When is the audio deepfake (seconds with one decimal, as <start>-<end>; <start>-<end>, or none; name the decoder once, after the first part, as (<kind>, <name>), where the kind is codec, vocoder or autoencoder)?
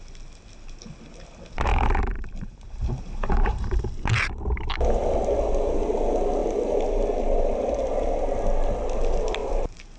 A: 1.7-3.8 (vocoder, BigVGAN v2); 6.4-7.2; 9.4-10.0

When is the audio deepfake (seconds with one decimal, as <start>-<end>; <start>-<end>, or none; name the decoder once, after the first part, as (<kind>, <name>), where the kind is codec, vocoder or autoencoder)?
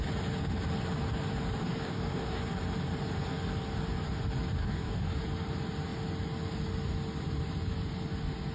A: 1.6-2.4 (codec, DAC); 4.6-5.2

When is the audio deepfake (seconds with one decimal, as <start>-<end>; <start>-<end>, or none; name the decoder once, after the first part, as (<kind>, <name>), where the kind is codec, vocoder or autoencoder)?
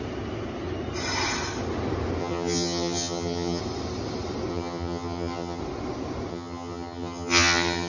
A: 2.2-3.6 (vocoder, HiFi-GAN); 4.5-5.6; 6.3-7.9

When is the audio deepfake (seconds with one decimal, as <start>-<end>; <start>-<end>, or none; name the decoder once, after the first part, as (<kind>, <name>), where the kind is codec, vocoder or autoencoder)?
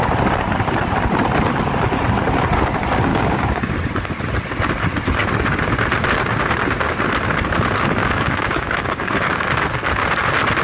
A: 3.1-3.7 (codec, DAC); 8.0-9.6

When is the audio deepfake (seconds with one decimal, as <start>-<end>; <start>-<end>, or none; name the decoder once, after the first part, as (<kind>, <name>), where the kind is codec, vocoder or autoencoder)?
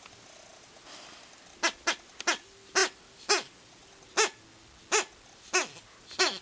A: none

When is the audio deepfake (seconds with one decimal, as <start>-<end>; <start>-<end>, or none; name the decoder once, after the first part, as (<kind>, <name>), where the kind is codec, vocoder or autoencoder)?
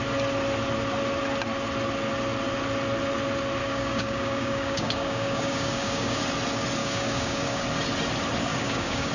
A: 3.6-6.2 (codec, DAC); 6.8-7.6; 8.5-9.1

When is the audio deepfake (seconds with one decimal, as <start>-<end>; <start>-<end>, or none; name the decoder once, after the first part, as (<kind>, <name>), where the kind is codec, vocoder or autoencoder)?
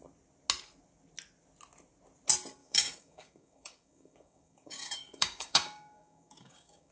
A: 2.6-6.9 (codec, DAC)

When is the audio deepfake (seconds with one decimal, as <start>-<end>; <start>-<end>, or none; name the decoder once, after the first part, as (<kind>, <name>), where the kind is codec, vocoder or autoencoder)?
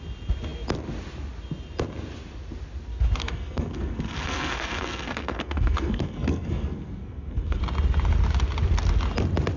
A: 3.2-7.6 (codec, SNAC)